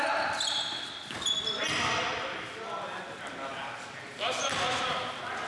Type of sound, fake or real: real